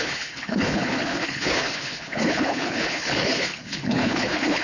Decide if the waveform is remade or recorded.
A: remade